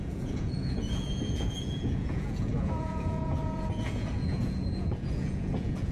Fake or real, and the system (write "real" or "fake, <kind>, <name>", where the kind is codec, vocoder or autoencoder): fake, vocoder, Vocos